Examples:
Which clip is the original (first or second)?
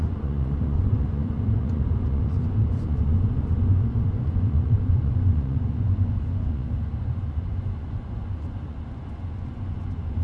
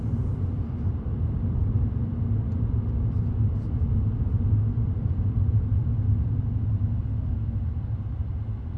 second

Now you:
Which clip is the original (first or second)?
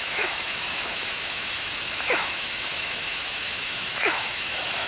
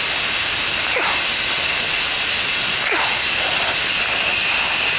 second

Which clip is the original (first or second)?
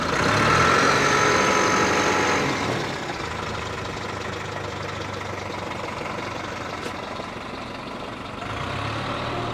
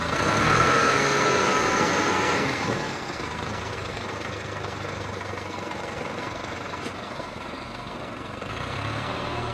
first